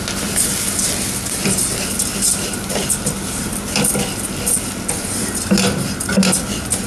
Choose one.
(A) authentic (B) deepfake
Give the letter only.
A